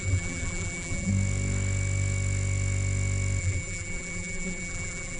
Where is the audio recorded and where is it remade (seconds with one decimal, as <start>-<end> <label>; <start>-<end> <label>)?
0.0-1.1 remade; 1.1-3.4 recorded; 3.4-5.2 remade

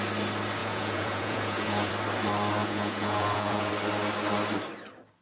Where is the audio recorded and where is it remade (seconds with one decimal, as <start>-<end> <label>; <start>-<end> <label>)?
0.0-0.6 recorded; 0.6-1.9 remade; 1.9-2.6 recorded; 2.6-3.7 remade; 3.7-5.2 recorded

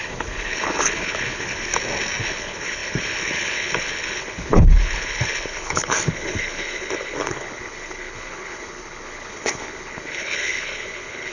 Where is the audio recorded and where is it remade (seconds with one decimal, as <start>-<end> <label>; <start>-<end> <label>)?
0.0-1.7 remade; 1.7-2.2 recorded; 2.2-11.3 remade

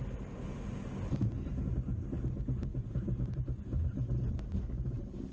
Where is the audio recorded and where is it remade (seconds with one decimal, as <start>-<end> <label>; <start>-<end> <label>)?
0.0-2.7 recorded; 2.7-3.3 remade; 3.3-5.3 recorded

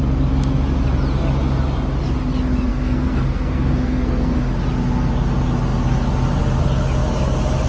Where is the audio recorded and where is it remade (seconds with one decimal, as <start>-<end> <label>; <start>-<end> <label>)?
0.0-2.7 recorded; 2.7-4.5 remade; 4.5-7.7 recorded

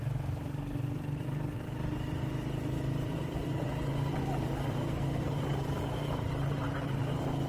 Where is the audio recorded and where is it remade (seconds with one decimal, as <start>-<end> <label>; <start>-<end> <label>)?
0.0-4.8 recorded; 4.8-5.3 remade; 5.3-7.5 recorded